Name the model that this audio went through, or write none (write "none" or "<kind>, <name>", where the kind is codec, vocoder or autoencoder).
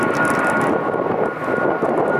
none